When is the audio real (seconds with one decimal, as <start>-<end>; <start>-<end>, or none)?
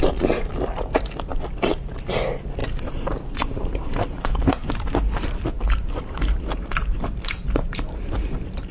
0.0-2.6; 4.7-5.5